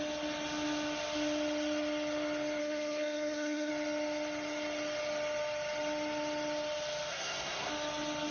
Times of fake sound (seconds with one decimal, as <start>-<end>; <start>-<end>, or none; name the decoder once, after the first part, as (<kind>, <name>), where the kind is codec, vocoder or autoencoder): 2.6-3.7 (codec, SNAC); 7.1-7.7